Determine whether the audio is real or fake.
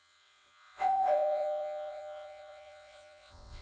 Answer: fake